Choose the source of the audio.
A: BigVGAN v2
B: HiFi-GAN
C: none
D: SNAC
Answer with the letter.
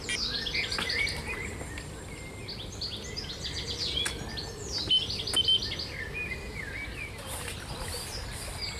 C